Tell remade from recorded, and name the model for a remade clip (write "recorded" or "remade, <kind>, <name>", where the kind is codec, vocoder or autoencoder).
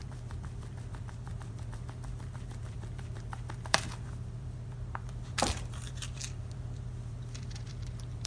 remade, vocoder, BigVGAN v2